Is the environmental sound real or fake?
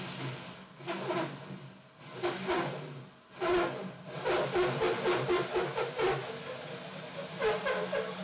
real